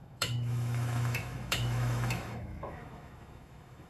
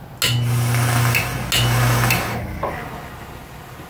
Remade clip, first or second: first